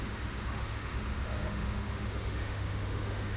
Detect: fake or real fake